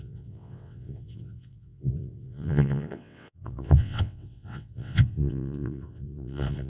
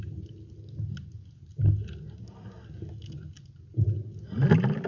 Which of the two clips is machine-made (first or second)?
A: first